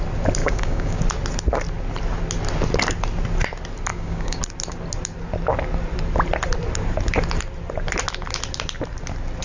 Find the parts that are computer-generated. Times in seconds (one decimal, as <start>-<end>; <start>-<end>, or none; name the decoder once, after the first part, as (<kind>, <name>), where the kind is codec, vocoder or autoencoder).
0.4-1.0 (codec, DAC); 3.9-4.4